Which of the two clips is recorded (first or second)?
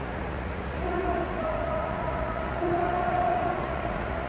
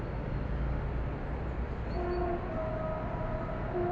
second